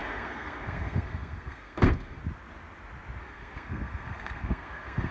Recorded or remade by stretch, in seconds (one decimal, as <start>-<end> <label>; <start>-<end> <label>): 0.0-2.2 remade; 2.2-3.2 recorded; 3.2-5.1 remade